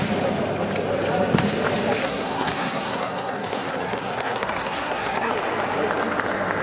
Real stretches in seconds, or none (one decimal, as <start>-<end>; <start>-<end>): 0.0-2.0; 5.3-6.6